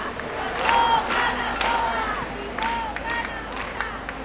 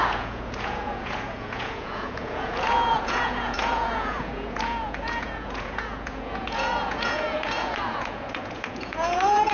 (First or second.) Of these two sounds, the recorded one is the first